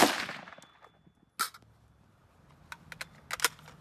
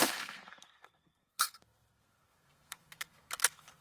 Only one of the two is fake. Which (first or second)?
second